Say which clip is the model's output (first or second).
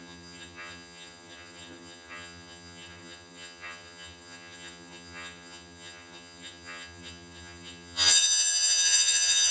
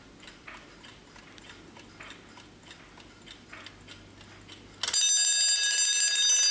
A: first